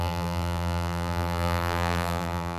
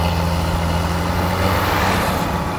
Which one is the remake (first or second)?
first